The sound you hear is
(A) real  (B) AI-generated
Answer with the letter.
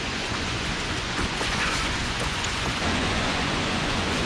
B